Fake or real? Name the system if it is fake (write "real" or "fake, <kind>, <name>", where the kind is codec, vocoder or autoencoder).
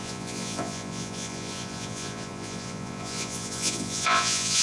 fake, vocoder, Vocos